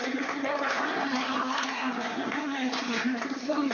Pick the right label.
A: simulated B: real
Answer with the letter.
A